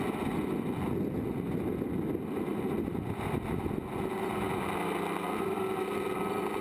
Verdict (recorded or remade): recorded